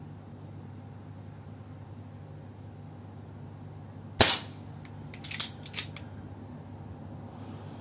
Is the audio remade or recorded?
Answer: recorded